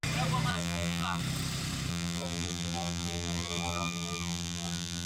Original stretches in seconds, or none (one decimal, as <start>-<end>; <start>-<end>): 0.0-0.5; 1.2-1.9